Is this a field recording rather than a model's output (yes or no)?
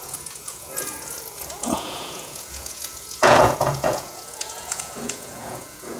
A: no